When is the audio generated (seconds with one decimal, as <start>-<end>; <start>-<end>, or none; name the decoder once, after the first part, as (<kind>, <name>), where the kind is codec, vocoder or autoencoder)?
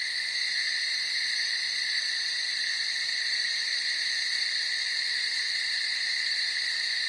none